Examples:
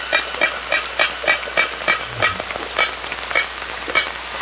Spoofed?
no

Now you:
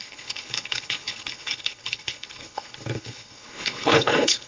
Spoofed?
yes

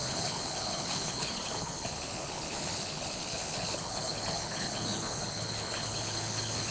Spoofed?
yes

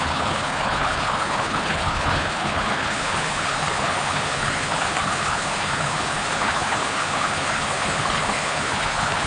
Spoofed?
yes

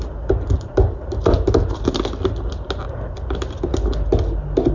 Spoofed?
no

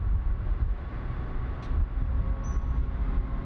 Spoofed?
no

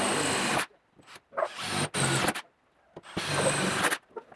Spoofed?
no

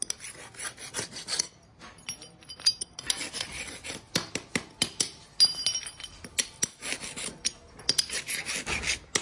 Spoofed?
no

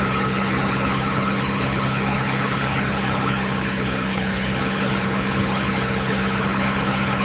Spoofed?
yes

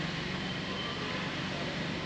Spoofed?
no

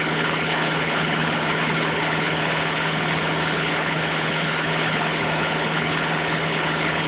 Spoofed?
yes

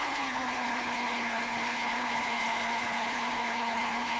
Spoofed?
yes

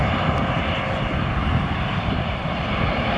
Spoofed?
no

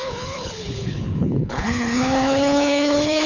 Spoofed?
yes